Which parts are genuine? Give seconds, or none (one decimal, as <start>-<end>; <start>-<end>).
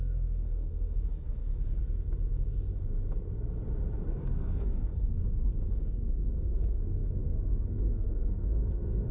1.4-4.1; 5.2-5.7